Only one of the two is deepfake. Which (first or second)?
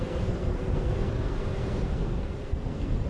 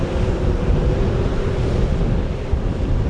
first